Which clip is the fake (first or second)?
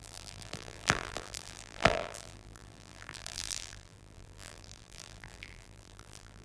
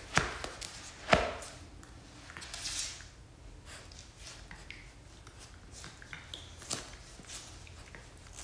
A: first